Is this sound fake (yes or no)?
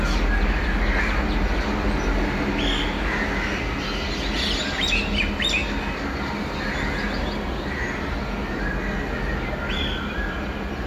no